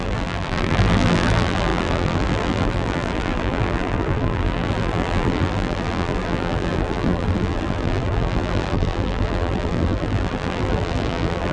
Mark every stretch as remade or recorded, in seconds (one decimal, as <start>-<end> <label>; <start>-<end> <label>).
0.0-11.5 remade